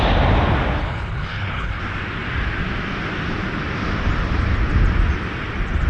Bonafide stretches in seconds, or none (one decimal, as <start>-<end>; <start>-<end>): 0.0-0.8; 1.8-5.9